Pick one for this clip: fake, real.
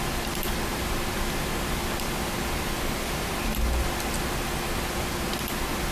real